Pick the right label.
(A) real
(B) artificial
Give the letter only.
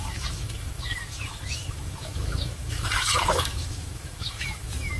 B